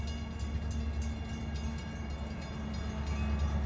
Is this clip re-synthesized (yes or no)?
no